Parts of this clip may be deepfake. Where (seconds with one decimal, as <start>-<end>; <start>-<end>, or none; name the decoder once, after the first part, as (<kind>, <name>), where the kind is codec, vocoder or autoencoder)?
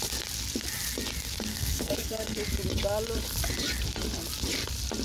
1.5-2.4 (codec, SNAC)